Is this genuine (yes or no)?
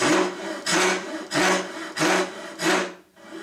yes